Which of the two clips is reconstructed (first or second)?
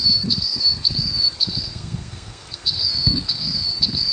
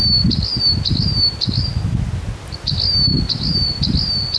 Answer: first